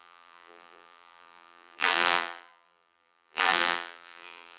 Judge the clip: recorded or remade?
remade